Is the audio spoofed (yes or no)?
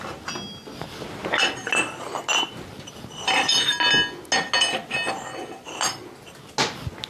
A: no